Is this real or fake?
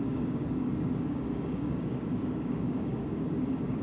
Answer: fake